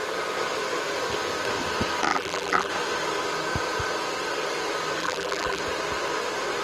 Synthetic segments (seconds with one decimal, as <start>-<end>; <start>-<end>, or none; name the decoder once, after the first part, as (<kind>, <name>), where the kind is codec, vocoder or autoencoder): 2.1-2.7 (vocoder, BigVGAN v2); 5.0-5.6